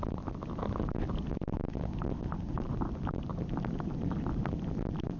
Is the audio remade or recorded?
recorded